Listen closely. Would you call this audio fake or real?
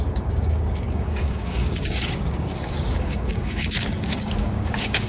fake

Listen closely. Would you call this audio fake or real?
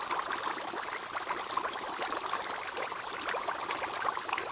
real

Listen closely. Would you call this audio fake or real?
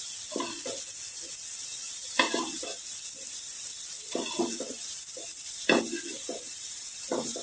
real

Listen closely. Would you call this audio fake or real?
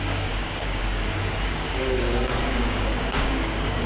fake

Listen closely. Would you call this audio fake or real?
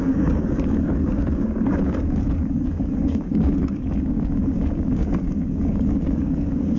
fake